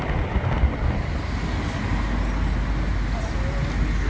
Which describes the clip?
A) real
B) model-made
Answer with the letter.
A